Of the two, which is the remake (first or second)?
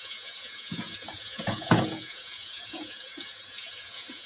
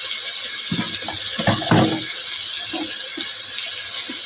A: first